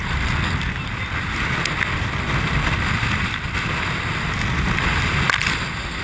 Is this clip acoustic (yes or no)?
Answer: yes